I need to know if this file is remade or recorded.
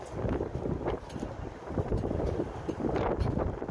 recorded